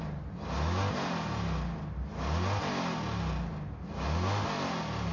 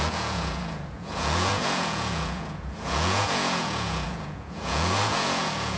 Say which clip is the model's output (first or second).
second